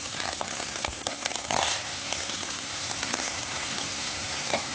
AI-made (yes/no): yes